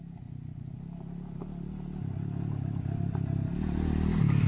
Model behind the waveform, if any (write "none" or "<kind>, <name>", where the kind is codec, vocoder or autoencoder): none